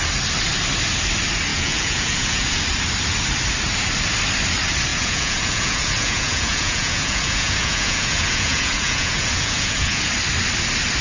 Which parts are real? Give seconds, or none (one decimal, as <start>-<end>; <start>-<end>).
0.0-1.5; 2.6-4.9; 10.1-11.0